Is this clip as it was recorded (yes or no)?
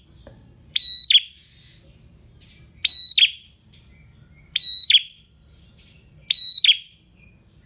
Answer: yes